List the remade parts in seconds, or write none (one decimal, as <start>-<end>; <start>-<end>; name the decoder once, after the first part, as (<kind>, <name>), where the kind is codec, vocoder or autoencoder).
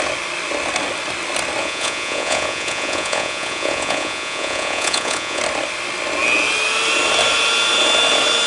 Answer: 1.6-5.4 (vocoder, Vocos)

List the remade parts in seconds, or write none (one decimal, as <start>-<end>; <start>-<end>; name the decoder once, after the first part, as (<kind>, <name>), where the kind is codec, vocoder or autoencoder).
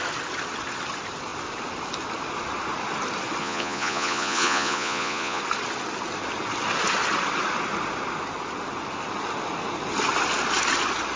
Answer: 3.4-5.4 (vocoder, Vocos)